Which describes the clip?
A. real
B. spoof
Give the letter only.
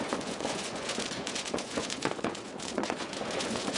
B